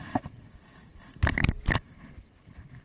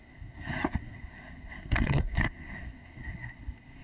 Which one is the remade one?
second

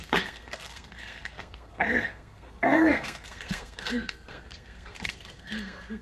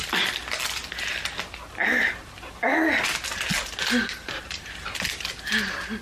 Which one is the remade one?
first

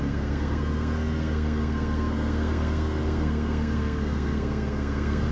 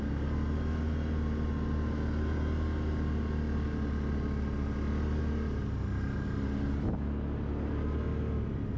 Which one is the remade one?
first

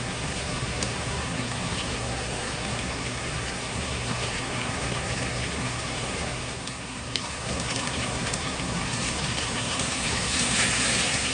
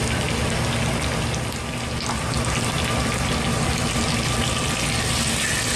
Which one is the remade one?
first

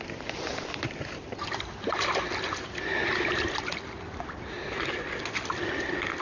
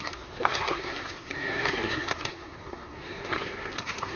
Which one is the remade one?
second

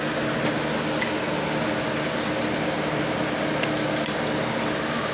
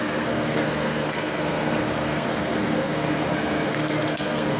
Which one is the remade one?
second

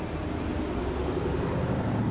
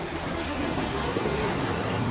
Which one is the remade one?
second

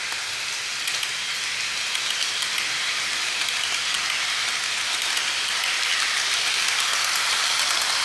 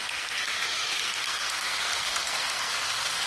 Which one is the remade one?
second